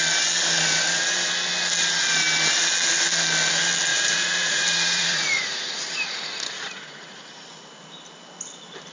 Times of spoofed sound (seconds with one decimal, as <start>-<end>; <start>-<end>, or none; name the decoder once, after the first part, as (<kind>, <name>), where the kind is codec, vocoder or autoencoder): 3.9-7.2 (vocoder, Vocos)